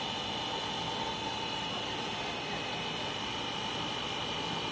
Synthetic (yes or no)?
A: no